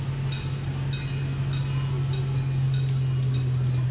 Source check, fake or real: real